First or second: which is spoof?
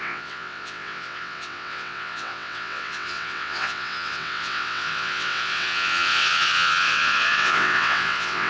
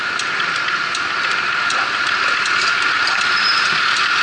first